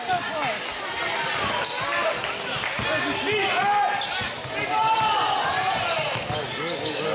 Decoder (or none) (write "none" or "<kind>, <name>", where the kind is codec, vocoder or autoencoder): none